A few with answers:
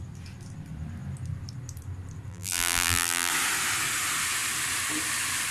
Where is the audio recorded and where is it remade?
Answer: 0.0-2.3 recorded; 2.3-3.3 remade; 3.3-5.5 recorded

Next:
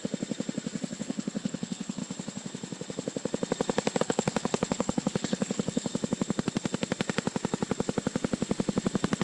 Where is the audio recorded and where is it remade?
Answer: 0.0-0.8 recorded; 0.8-2.0 remade; 2.0-4.0 recorded; 4.0-5.9 remade; 5.9-9.2 recorded

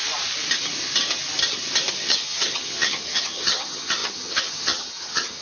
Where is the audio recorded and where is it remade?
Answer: 0.0-1.9 recorded; 1.9-5.4 remade

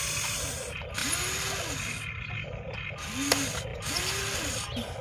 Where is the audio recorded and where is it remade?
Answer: 0.0-3.7 recorded; 3.7-4.2 remade; 4.2-5.0 recorded